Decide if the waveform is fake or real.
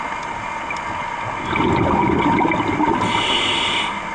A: real